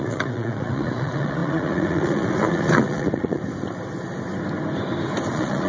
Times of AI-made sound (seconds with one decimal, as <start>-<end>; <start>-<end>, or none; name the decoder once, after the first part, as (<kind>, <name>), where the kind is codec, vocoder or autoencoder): 0.0-3.4 (vocoder, Vocos); 5.3-5.7